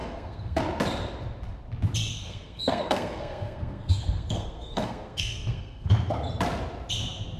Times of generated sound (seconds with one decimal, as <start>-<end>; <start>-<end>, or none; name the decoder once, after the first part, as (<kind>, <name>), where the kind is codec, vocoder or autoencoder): 0.0-0.6 (codec, SNAC); 2.1-5.9